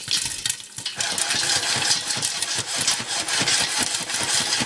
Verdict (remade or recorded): recorded